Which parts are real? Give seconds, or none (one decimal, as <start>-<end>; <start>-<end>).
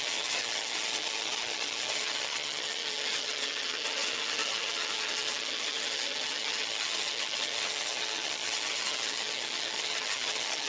none